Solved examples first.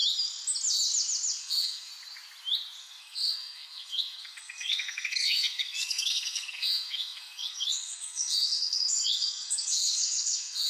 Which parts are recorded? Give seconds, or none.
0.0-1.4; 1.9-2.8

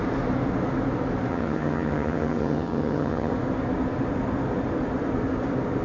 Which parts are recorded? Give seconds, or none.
0.0-1.3; 3.3-5.8

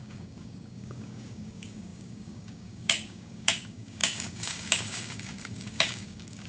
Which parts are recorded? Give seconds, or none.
none

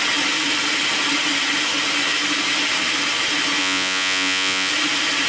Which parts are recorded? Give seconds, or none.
0.0-3.6; 4.7-5.3

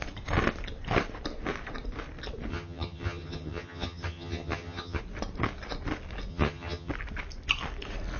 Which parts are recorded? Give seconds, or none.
0.0-2.5; 5.0-6.3; 6.9-8.2